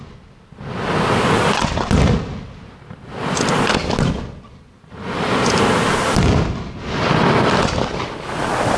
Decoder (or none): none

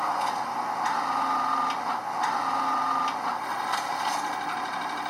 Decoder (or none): none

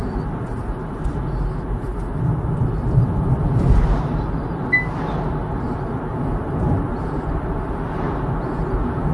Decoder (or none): none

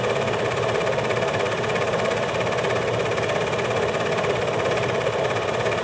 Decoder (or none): none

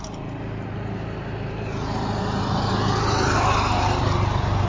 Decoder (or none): none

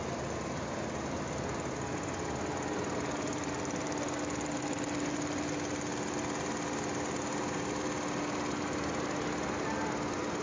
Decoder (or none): none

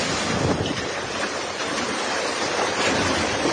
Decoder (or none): none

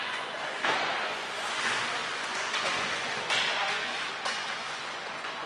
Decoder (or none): vocoder, Vocos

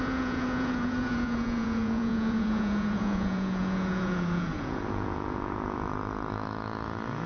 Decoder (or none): vocoder, Vocos